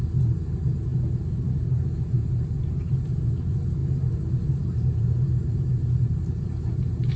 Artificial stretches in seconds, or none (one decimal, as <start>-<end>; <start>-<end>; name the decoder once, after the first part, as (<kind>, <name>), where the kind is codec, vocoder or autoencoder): 0.0-7.2 (vocoder, BigVGAN v2)